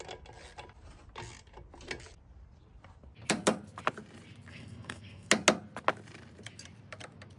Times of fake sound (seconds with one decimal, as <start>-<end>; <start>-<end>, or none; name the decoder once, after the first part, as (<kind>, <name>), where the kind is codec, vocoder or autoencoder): 4.5-5.3 (codec, SNAC)